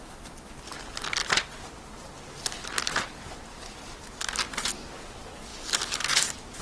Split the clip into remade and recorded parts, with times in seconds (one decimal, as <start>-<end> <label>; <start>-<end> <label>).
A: 0.0-6.6 recorded